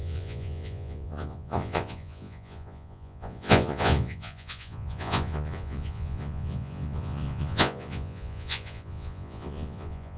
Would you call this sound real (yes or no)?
no